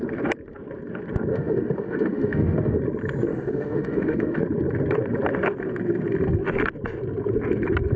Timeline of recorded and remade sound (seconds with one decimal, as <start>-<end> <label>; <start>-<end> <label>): 0.0-1.3 recorded; 1.3-2.8 remade; 2.8-3.3 recorded; 3.3-4.4 remade; 4.4-8.0 recorded